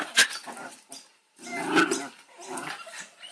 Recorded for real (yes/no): yes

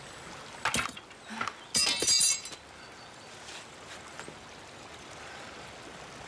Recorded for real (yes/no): yes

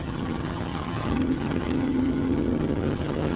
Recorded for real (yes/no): no